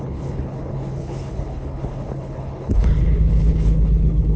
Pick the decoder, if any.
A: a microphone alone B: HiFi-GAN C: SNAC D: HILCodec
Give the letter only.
D